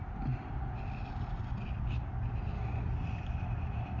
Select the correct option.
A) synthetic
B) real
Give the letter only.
B